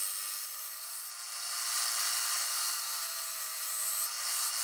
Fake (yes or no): no